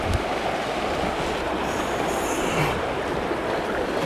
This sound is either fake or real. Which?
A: real